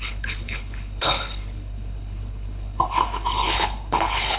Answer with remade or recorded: remade